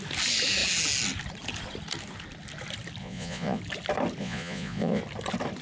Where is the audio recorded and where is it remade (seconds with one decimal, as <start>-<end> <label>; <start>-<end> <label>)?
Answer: 0.0-3.0 recorded; 3.0-3.6 remade; 3.6-4.2 recorded; 4.2-5.0 remade; 5.0-5.6 recorded